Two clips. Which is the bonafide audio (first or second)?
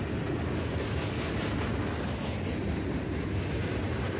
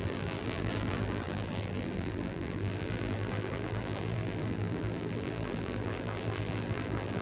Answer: first